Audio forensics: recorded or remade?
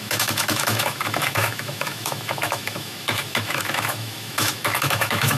remade